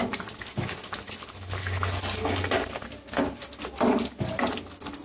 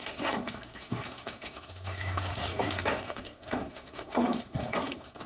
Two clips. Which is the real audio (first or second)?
first